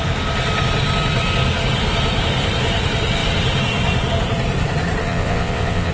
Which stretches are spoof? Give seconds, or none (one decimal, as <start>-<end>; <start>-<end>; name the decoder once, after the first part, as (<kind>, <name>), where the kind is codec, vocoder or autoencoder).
5.0-5.9 (vocoder, WaveNeXt)